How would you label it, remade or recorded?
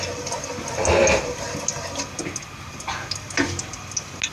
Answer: recorded